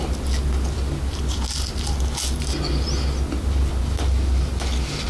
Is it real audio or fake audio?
real